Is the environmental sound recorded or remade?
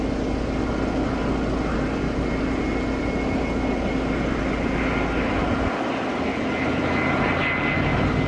recorded